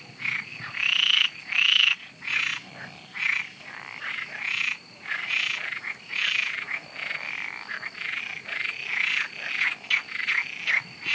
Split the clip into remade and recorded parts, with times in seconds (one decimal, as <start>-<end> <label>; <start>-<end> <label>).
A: 0.0-11.1 recorded